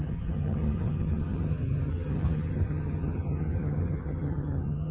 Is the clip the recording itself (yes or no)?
no